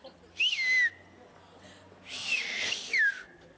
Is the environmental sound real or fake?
real